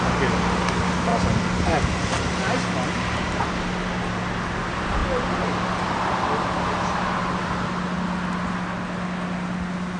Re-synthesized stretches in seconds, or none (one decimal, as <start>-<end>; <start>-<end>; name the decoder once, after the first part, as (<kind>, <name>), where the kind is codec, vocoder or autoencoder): none